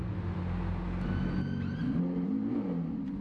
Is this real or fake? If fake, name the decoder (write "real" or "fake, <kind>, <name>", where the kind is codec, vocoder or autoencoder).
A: real